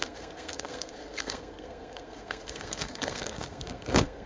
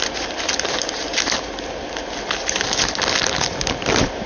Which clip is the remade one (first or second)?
first